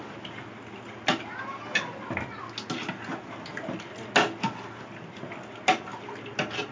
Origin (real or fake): real